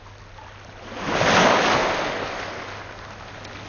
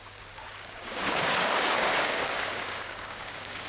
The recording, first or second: first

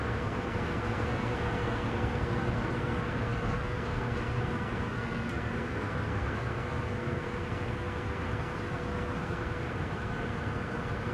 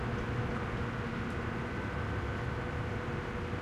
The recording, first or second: second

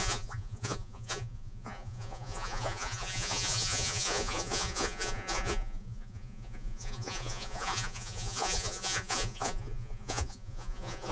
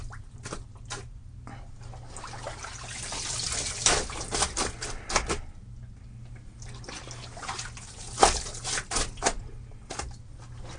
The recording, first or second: second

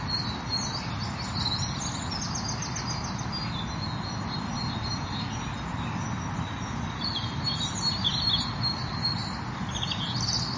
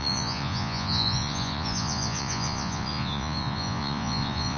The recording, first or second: first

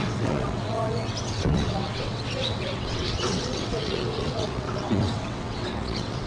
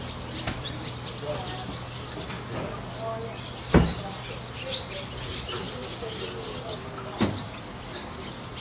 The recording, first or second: second